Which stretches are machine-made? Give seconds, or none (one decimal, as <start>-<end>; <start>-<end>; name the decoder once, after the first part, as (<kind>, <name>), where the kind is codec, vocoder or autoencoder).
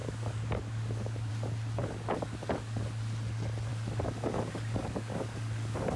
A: 0.0-1.3 (codec, DAC); 1.8-2.8; 3.7-6.0